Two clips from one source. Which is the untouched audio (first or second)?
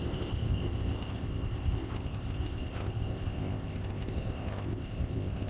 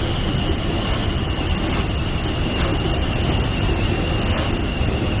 second